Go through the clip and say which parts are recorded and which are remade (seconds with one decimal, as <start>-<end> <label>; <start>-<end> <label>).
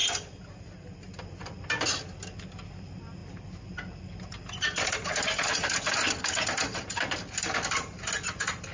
0.0-8.7 recorded